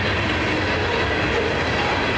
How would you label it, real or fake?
real